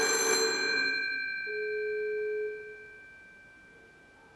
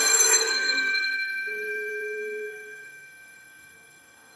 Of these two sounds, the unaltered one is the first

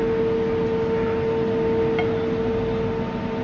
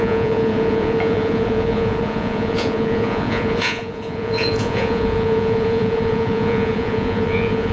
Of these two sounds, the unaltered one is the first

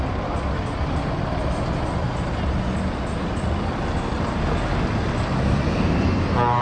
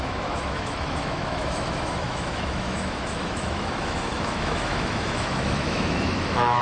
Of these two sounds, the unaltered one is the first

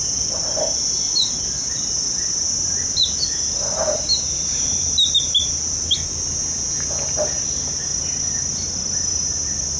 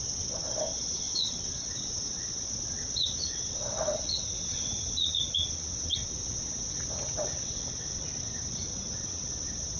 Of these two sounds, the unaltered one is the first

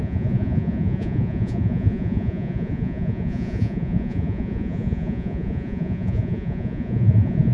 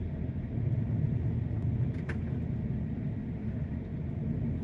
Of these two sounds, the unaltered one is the second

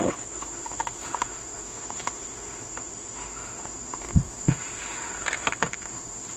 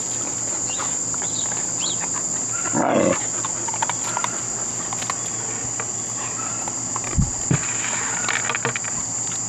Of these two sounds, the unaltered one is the second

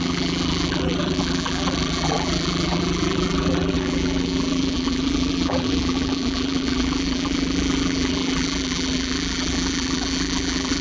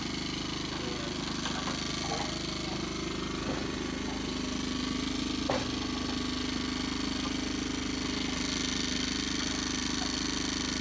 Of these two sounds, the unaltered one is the second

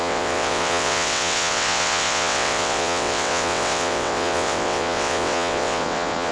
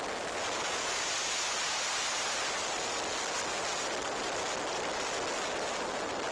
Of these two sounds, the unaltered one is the second